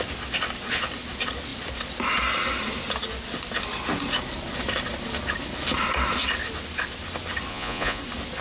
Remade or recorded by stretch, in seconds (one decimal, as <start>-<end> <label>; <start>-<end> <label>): 0.0-7.5 recorded; 7.5-8.0 remade; 8.0-8.4 recorded